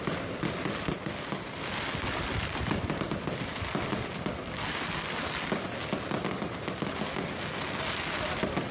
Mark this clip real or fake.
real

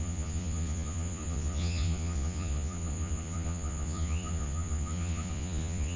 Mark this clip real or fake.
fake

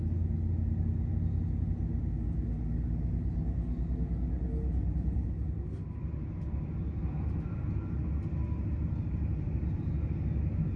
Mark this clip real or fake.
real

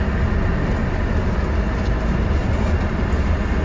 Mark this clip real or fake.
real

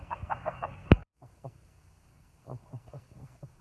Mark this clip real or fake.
fake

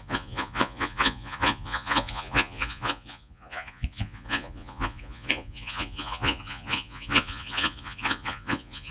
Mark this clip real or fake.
fake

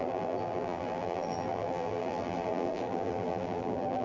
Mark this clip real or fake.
fake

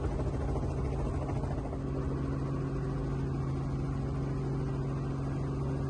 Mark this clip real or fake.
real